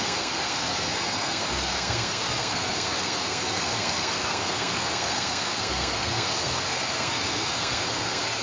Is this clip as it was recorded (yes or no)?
no